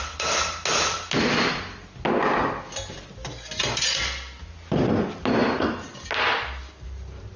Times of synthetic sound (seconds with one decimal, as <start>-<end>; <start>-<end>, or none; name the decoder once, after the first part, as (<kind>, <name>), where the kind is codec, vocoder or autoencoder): none